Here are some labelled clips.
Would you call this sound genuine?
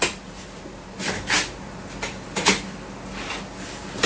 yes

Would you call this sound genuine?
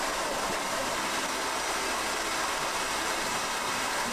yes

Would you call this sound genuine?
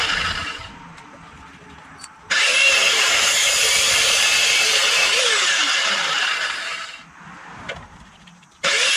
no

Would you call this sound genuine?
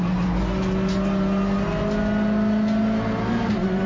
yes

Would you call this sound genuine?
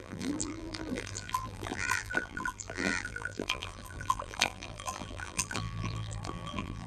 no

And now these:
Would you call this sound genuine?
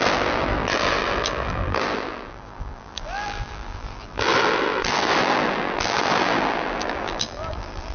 no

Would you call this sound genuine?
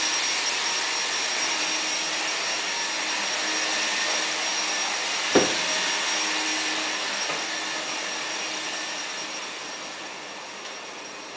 yes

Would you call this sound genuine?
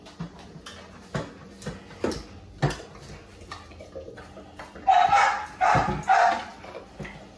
yes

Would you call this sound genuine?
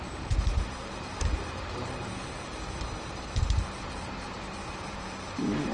no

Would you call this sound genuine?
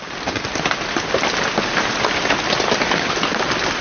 yes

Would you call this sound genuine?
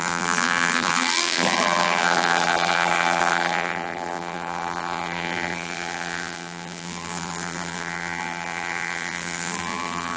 no